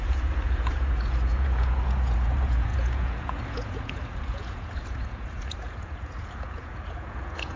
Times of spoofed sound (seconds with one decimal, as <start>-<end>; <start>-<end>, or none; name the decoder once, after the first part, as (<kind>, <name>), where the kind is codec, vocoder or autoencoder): 0.0-7.6 (vocoder, Vocos)